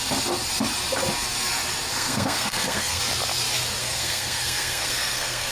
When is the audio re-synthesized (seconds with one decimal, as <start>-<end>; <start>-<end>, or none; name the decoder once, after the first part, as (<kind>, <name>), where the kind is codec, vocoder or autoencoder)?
1.9-3.0 (codec, SNAC); 3.8-5.5